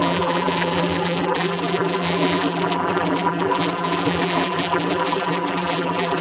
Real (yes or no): no